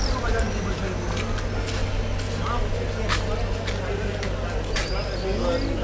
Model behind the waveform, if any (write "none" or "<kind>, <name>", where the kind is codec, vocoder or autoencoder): none